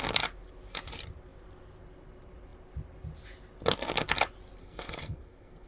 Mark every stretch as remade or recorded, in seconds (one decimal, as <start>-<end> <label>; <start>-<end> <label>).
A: 0.0-4.6 recorded; 4.6-5.7 remade